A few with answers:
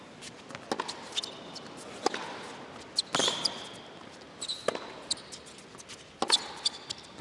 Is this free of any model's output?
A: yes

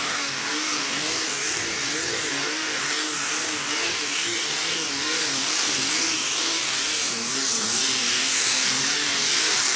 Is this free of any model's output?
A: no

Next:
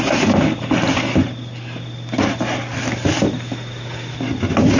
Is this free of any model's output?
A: yes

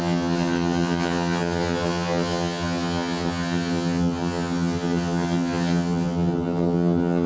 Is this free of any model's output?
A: no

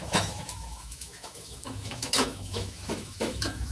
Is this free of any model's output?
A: no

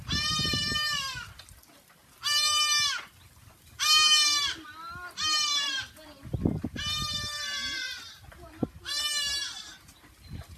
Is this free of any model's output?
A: yes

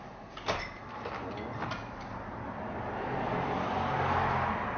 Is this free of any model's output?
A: yes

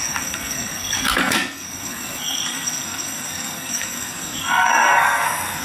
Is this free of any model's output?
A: no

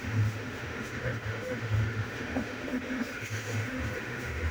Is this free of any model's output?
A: no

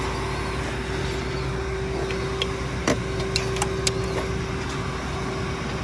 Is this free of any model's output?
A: yes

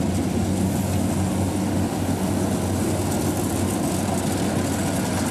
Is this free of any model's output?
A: yes